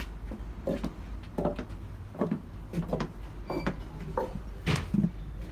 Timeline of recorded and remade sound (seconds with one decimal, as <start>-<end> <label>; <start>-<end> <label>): 0.0-5.5 recorded